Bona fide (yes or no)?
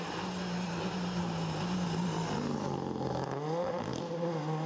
yes